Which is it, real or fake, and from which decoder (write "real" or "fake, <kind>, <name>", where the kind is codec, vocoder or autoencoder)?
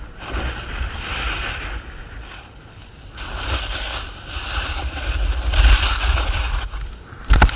real